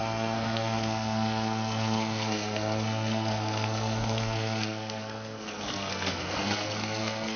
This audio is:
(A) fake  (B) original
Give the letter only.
A